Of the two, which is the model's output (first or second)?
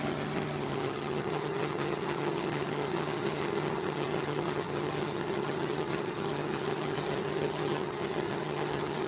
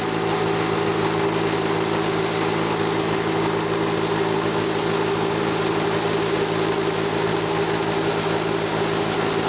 first